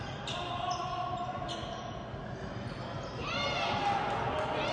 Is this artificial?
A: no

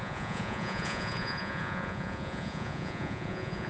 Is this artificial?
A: yes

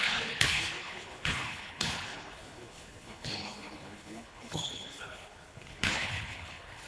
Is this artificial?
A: yes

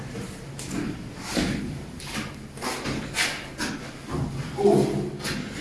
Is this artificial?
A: no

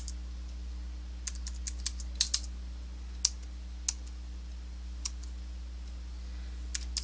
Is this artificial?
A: no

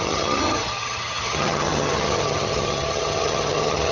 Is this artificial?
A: yes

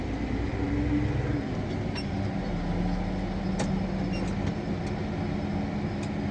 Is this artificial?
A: no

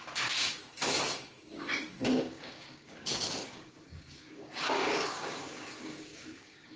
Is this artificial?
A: yes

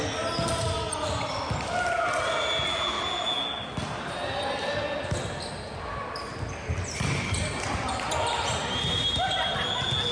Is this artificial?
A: no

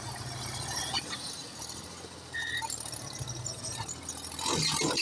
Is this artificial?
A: no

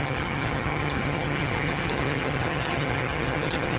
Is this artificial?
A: yes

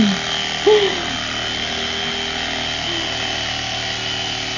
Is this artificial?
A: no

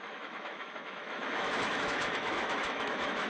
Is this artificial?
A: yes